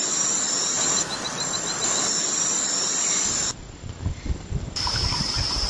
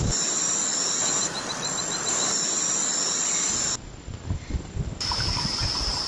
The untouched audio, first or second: second